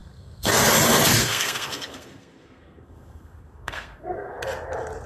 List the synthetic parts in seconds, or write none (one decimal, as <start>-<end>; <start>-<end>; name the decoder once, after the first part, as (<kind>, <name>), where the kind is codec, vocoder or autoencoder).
0.0-0.6 (codec, SNAC); 1.2-4.3